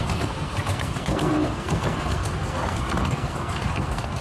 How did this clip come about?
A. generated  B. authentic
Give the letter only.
A